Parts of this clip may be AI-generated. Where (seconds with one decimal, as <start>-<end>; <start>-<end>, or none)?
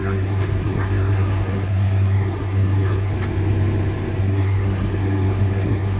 0.0-3.1; 4.2-6.0